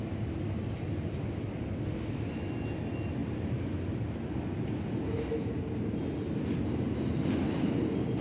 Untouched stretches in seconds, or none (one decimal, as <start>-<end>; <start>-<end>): 0.0-3.2; 4.0-8.2